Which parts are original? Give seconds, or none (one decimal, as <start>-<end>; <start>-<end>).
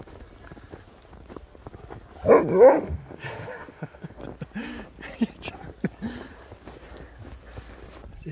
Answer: 0.0-2.7; 4.2-8.3